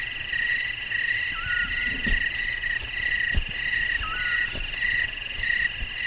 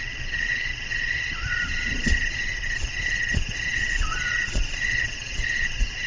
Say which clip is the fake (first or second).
second